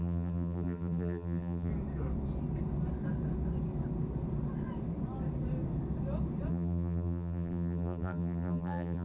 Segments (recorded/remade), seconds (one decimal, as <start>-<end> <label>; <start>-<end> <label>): 0.0-1.7 remade; 1.7-6.5 recorded; 6.5-9.0 remade